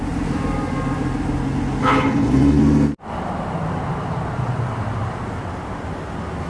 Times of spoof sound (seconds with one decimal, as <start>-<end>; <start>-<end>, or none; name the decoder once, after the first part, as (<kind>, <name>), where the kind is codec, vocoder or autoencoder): 1.8-2.6 (codec, HILCodec)